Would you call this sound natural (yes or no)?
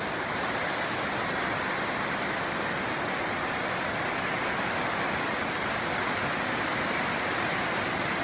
yes